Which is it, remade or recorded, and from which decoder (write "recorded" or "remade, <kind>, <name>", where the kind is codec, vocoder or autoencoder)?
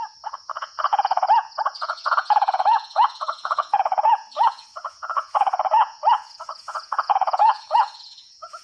remade, vocoder, Vocos